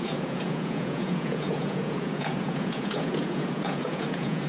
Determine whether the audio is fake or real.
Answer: fake